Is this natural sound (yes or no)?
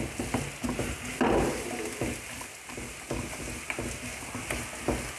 yes